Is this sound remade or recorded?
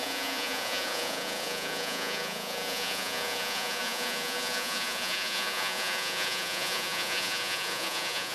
remade